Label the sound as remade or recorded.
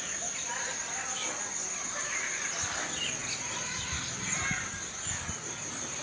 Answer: recorded